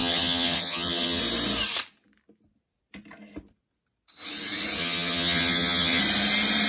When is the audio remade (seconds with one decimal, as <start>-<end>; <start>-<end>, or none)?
0.0-1.2; 4.8-6.0